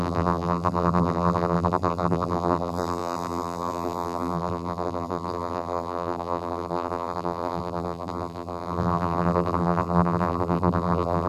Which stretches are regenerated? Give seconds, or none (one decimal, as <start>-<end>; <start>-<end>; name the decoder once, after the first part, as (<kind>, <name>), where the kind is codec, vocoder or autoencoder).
0.0-11.3 (vocoder, BigVGAN v2)